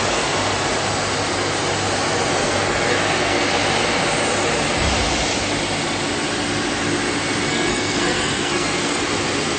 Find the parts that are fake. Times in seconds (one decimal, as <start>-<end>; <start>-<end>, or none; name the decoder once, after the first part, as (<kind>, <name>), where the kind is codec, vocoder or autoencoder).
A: 2.3-3.4 (codec, SNAC); 7.5-9.0